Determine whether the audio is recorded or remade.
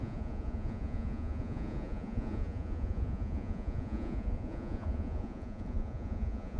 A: remade